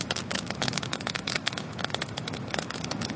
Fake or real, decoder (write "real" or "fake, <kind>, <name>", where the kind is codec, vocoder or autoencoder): fake, autoencoder, DAC-VAE